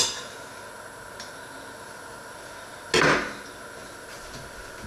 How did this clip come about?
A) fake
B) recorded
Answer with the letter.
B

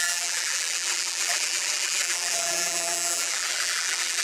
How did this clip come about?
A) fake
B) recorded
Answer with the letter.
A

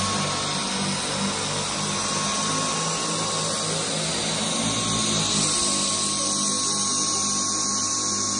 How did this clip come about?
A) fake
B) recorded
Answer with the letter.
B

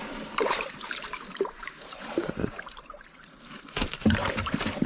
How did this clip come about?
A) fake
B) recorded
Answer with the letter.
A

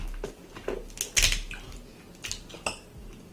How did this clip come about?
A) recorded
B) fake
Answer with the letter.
A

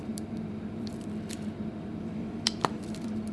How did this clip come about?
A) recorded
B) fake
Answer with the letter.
B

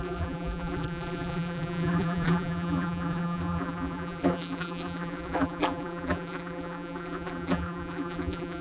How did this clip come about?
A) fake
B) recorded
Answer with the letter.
A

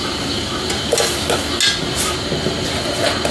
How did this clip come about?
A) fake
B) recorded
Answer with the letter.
B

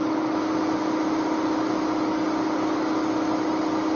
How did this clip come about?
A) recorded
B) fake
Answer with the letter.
A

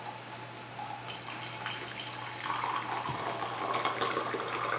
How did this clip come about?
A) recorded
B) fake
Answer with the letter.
A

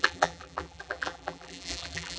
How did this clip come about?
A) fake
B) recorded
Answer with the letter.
A